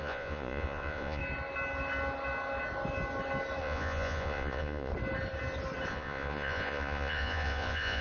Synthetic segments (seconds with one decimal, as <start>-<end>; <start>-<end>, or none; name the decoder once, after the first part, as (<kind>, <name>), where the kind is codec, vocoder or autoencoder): 0.0-1.2 (vocoder, Vocos); 3.6-4.9; 5.9-8.0